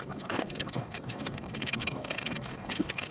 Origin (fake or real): fake